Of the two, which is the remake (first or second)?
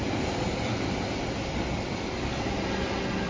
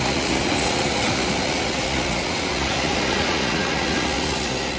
second